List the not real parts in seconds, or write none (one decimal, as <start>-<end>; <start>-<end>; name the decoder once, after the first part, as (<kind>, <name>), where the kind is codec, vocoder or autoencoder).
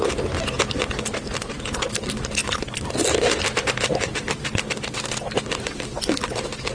none